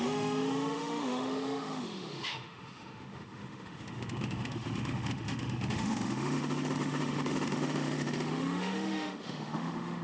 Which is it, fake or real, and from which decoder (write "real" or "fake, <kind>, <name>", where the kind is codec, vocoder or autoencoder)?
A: fake, autoencoder, DAC-VAE